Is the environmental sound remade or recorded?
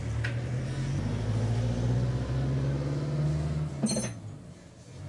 recorded